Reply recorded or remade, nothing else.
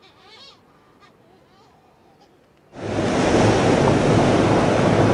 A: recorded